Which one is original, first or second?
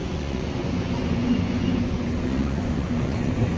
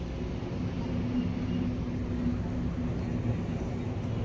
second